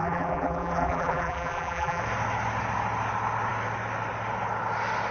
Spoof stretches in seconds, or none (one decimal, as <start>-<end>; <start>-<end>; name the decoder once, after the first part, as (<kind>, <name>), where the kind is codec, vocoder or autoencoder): 0.0-2.0 (vocoder, BigVGAN v2)